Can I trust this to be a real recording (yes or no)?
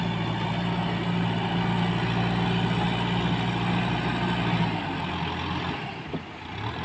yes